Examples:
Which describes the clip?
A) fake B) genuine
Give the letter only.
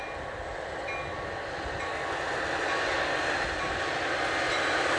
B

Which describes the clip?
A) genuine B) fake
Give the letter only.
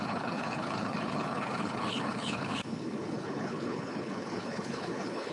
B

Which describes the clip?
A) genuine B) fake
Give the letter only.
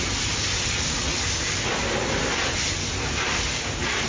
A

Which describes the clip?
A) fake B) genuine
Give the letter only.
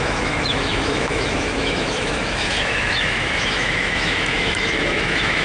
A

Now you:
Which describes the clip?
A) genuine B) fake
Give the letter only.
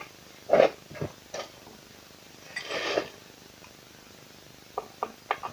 A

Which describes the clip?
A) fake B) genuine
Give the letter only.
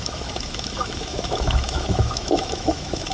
A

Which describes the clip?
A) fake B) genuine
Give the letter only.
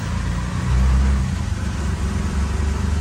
B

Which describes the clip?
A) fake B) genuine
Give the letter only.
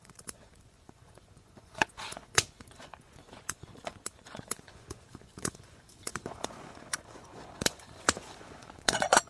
A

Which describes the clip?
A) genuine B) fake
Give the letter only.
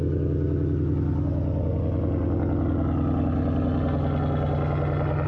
A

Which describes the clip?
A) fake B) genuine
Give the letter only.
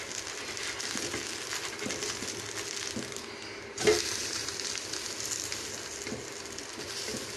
B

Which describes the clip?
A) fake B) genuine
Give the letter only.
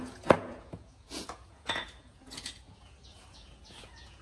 A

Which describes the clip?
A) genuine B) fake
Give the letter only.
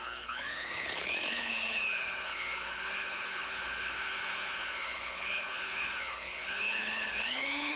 B